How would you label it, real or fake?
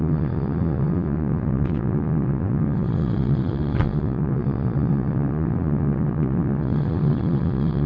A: fake